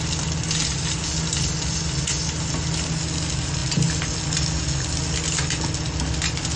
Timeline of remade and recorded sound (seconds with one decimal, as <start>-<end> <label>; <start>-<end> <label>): 0.0-6.6 recorded